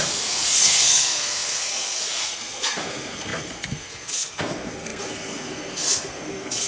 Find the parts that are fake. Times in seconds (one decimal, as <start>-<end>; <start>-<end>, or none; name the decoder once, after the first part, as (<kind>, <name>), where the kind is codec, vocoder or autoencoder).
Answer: 0.0-6.7 (codec, SNAC)